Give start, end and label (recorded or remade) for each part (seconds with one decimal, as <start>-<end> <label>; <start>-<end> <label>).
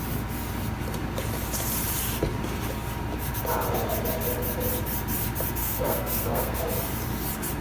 0.0-5.6 recorded; 5.6-6.6 remade; 6.6-7.6 recorded